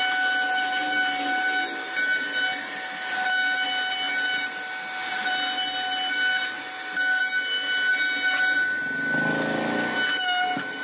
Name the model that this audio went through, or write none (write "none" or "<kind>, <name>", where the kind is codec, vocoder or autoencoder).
none